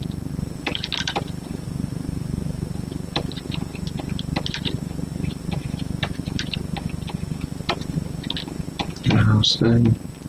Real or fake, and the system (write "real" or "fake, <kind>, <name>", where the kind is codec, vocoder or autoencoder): real